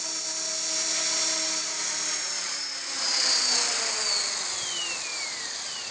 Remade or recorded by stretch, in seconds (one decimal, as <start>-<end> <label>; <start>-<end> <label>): 0.0-5.1 recorded; 5.1-5.9 remade